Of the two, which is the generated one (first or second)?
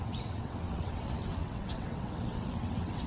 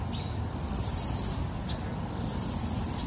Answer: first